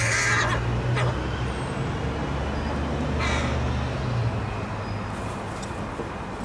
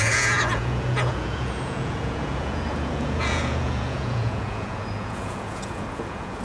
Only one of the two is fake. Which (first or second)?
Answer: second